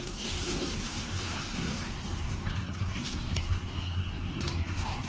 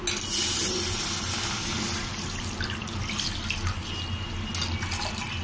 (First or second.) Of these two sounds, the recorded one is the second